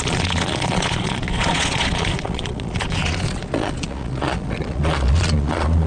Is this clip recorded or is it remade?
remade